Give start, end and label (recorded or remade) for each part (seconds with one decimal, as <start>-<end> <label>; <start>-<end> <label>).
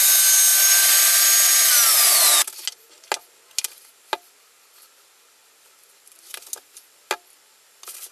0.0-0.5 recorded; 0.5-1.2 remade; 1.2-8.1 recorded